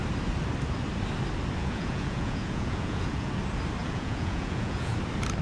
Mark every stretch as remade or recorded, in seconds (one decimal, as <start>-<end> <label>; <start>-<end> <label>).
0.0-1.6 recorded; 1.6-3.3 remade; 3.3-3.8 recorded; 3.8-4.9 remade; 4.9-5.4 recorded